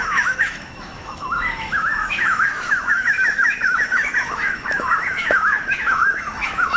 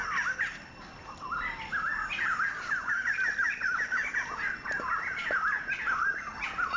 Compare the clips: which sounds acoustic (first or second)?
second